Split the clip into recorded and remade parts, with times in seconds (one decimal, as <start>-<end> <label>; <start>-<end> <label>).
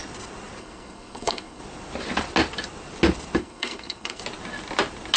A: 0.0-0.6 recorded; 0.6-1.6 remade; 1.6-3.4 recorded; 3.4-4.2 remade; 4.2-5.2 recorded